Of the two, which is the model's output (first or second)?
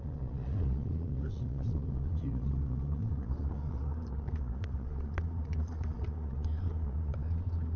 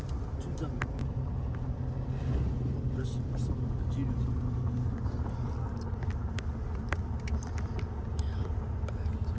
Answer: first